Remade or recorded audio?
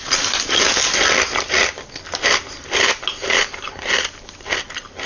recorded